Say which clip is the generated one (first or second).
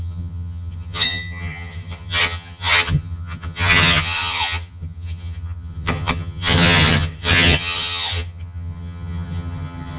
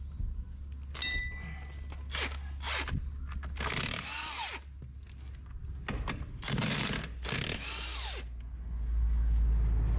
first